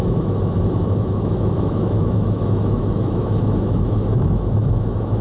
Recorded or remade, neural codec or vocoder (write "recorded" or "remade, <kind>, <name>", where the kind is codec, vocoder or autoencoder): remade, autoencoder, DAC-VAE